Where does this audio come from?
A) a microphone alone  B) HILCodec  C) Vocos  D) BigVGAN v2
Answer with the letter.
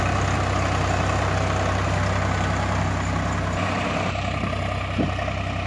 A